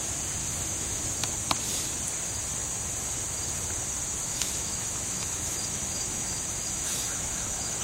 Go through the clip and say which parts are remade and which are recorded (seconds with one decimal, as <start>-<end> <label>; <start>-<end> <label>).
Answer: 0.0-0.4 recorded; 0.4-1.0 remade; 1.0-4.2 recorded; 4.2-7.8 remade